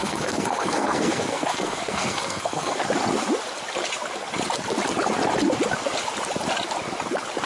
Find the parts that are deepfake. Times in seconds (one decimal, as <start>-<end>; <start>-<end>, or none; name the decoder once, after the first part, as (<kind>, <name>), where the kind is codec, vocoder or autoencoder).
0.0-2.8 (codec, SNAC)